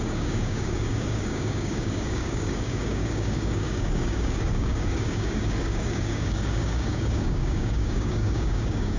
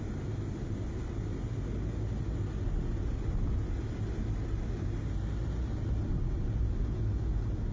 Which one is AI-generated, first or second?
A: first